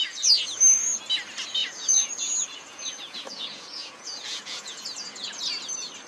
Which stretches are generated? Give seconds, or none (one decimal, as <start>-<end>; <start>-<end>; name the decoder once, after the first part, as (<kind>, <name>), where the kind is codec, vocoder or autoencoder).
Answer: 1.6-5.3 (vocoder, Vocos)